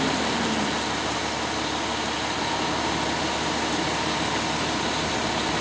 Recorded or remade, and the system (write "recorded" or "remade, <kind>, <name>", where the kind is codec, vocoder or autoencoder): recorded